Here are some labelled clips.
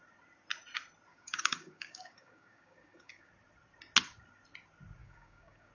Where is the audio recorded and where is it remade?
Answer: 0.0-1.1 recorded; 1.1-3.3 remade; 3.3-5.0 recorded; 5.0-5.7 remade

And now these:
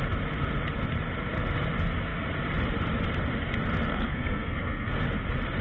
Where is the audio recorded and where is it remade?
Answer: 0.0-3.9 recorded; 3.9-4.9 remade; 4.9-5.6 recorded